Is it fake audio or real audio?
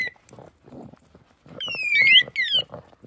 real